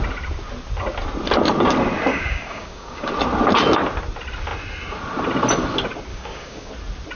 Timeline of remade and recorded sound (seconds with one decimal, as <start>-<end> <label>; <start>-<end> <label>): 0.0-2.1 recorded; 2.1-3.1 remade; 3.1-6.1 recorded; 6.1-6.7 remade; 6.7-7.2 recorded

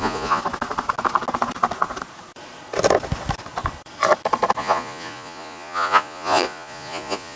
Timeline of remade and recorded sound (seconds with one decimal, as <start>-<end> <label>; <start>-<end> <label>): 0.0-0.4 remade; 0.4-4.6 recorded; 4.6-7.4 remade

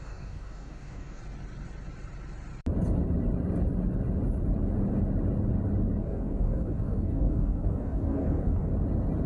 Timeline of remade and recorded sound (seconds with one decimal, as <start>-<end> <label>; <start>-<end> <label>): 0.0-1.2 remade; 1.2-6.0 recorded; 6.0-8.7 remade; 8.7-9.3 recorded

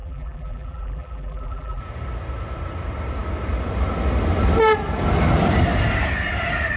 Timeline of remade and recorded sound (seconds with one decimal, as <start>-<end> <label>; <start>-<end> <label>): 0.0-1.8 remade; 1.8-6.8 recorded

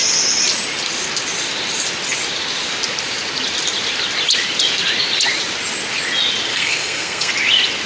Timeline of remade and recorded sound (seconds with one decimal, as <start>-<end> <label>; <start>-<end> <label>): 0.0-6.5 recorded; 6.5-7.3 remade; 7.3-7.9 recorded